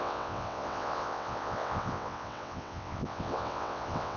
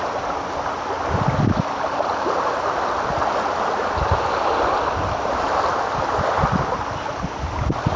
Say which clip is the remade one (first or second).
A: first